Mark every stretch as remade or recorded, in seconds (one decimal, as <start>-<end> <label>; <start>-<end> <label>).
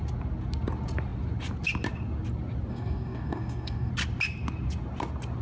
0.0-2.7 recorded; 2.7-3.9 remade; 3.9-5.4 recorded